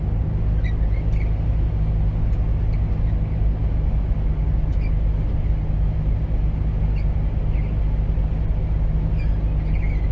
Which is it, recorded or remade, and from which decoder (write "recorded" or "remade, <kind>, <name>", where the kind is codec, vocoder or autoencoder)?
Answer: recorded